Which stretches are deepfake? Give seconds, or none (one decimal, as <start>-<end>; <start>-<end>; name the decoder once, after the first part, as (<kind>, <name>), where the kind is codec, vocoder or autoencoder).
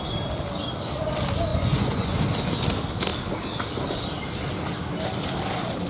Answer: 1.5-2.1 (vocoder, Vocos)